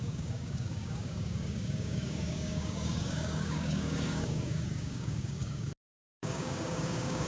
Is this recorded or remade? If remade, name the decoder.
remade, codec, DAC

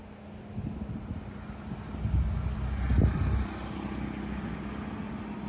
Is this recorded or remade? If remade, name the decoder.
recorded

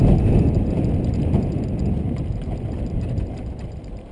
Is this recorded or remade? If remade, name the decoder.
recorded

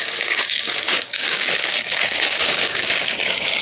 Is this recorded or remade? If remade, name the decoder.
remade, codec, DAC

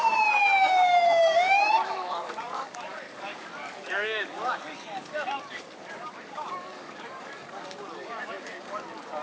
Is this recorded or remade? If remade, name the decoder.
remade, codec, DAC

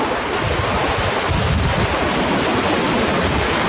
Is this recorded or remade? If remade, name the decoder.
recorded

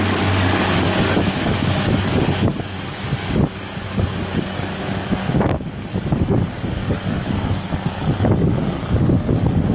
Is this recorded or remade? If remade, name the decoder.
remade, codec, DAC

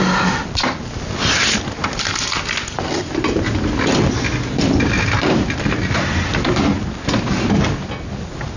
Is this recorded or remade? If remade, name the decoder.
recorded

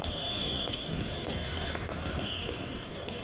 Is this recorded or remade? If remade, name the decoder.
remade, codec, DAC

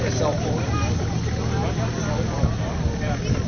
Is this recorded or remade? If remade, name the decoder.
recorded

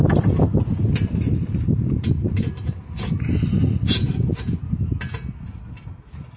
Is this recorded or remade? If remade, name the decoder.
recorded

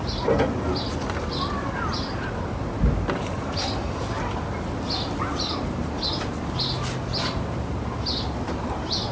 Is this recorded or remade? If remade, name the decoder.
recorded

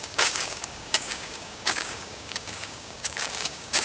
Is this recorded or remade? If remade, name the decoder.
remade, codec, DAC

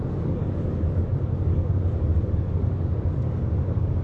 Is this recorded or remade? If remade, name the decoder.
remade, codec, DAC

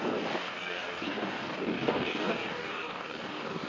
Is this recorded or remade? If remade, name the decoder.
remade, codec, DAC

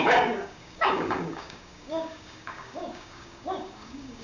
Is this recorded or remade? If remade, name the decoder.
remade, codec, DAC